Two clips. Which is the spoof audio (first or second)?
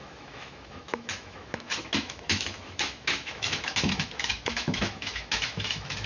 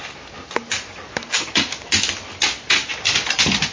first